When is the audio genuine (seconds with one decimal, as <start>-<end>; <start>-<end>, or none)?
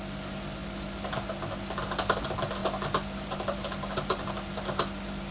0.0-2.6; 4.3-5.3